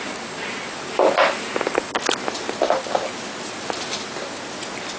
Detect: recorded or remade recorded